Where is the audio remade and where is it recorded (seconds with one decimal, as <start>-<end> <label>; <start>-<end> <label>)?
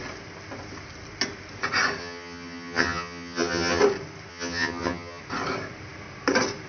0.0-2.0 recorded; 2.0-3.8 remade; 3.8-4.3 recorded; 4.3-5.2 remade; 5.2-6.7 recorded